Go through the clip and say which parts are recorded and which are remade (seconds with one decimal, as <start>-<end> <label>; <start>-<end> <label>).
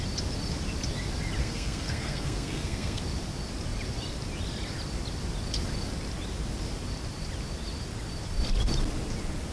0.0-1.4 recorded; 1.4-3.0 remade; 3.0-9.5 recorded